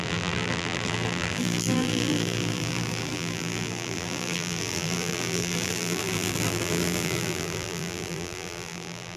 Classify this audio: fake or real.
fake